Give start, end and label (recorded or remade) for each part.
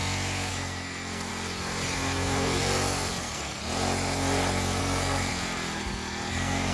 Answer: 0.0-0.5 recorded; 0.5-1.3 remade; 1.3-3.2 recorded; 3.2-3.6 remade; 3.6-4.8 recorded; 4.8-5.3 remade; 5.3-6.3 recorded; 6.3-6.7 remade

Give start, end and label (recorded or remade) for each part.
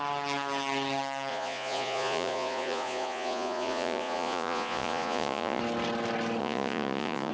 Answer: 0.0-1.3 recorded; 1.3-5.6 remade; 5.6-6.4 recorded; 6.4-7.3 remade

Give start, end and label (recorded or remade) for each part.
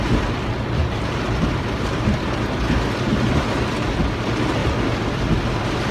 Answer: 0.0-0.8 recorded; 0.8-3.3 remade; 3.3-5.9 recorded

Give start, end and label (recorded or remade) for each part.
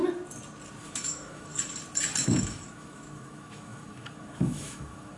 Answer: 0.0-0.8 recorded; 0.8-1.5 remade; 1.5-2.2 recorded; 2.2-5.2 remade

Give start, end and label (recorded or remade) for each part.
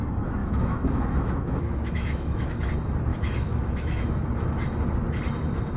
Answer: 0.0-0.4 recorded; 0.4-2.7 remade; 2.7-3.1 recorded; 3.1-4.2 remade; 4.2-5.8 recorded